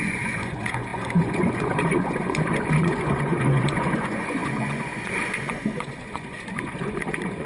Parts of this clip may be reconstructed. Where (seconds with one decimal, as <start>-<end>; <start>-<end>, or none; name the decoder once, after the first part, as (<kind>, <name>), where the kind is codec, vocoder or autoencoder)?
0.0-7.5 (vocoder, Vocos)